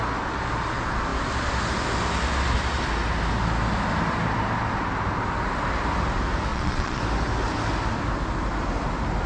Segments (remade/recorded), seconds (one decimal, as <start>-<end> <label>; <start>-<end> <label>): 0.0-6.5 recorded; 6.5-7.0 remade; 7.0-9.3 recorded